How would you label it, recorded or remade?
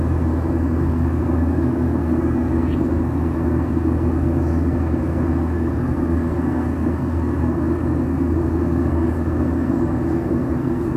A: remade